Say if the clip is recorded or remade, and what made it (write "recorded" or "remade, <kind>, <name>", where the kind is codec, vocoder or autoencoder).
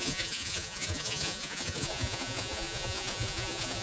remade, vocoder, Vocos